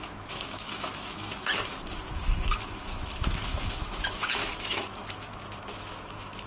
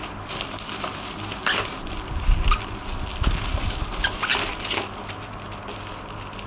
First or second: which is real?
second